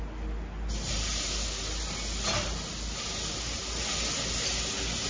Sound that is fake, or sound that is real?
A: real